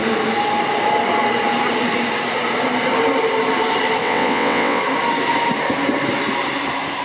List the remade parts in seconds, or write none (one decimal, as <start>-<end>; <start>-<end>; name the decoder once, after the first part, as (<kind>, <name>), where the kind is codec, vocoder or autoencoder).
4.0-4.8 (vocoder, WaveNeXt)